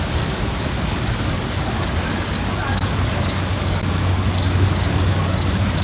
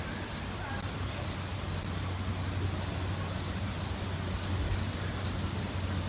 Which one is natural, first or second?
second